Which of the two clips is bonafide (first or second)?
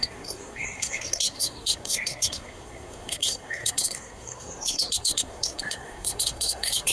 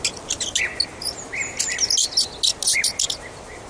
second